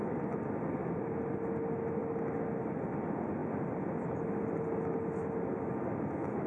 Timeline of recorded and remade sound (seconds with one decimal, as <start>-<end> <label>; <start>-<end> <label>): 0.0-6.5 recorded

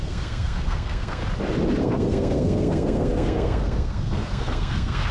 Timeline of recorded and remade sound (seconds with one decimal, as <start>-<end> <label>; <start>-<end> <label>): 0.0-1.2 remade; 1.2-1.8 recorded; 1.8-5.1 remade

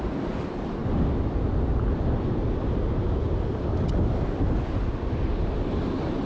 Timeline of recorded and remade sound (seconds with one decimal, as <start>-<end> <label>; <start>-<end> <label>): 0.0-6.3 recorded

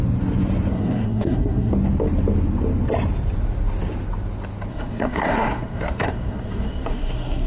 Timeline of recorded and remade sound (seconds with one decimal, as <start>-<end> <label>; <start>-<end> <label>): 0.0-0.7 recorded; 0.7-1.7 remade; 1.7-4.7 recorded; 4.7-7.5 remade